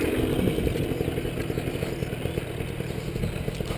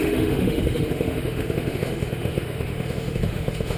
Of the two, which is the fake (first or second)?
second